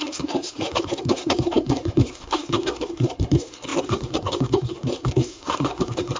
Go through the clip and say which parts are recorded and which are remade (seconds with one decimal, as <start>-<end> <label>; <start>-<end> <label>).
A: 0.0-6.2 remade